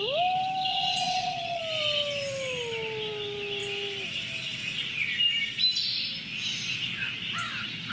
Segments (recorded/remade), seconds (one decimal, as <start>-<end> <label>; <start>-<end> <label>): 0.0-0.7 recorded; 0.7-1.6 remade; 1.6-7.9 recorded